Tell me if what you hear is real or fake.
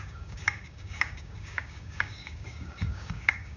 fake